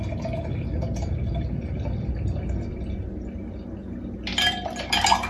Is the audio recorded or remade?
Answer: recorded